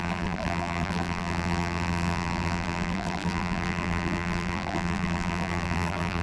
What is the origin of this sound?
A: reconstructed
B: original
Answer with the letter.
A